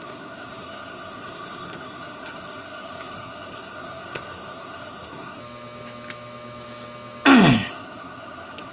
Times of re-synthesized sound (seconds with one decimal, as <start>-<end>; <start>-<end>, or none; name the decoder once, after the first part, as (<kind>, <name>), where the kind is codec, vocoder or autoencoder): 0.0-5.4 (codec, SNAC); 7.7-8.7